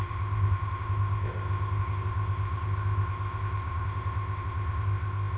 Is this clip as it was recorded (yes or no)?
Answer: no